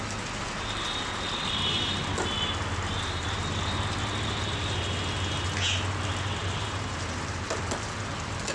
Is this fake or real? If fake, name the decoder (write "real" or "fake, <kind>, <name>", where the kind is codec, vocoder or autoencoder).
real